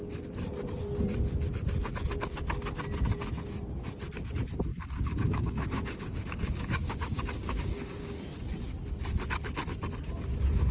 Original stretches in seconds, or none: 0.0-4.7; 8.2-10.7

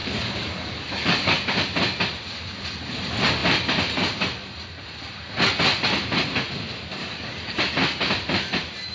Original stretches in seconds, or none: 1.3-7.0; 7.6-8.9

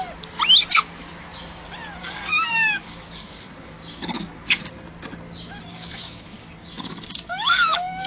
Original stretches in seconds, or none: 0.0-2.0; 4.6-5.7

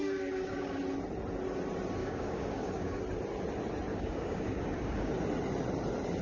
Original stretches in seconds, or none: 0.8-2.0; 3.0-3.9; 5.1-6.2